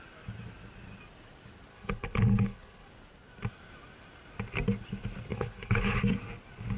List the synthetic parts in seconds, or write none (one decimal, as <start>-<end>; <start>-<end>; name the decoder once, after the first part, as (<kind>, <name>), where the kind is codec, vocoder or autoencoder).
1.7-2.9 (codec, HILCodec); 5.3-6.0